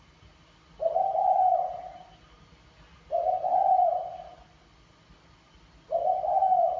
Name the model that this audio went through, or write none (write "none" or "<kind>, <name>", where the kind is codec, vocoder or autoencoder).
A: none